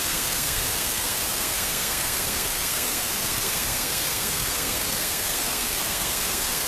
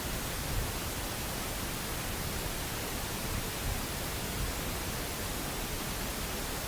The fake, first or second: first